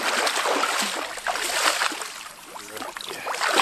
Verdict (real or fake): real